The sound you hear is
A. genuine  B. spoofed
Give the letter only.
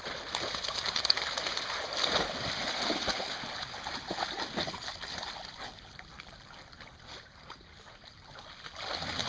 A